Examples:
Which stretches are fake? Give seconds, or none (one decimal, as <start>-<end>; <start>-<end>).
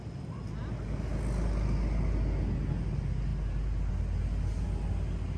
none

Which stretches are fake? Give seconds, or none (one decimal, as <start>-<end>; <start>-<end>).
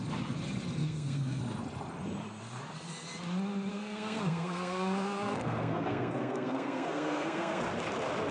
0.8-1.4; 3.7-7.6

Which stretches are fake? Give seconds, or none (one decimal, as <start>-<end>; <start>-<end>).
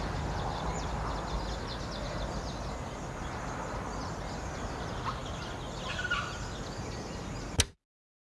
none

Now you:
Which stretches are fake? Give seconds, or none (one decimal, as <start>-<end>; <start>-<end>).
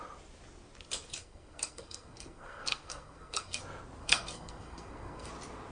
1.2-3.6; 4.0-5.3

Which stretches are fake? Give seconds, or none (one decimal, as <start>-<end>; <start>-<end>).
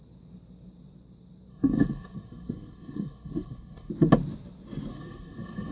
1.5-3.9; 4.9-5.7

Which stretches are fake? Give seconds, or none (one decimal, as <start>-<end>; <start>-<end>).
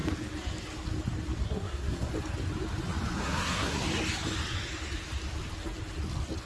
1.4-2.1; 3.2-3.8